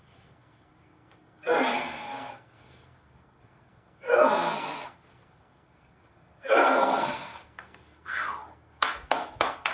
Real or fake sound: fake